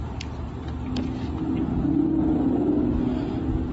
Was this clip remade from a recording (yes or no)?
no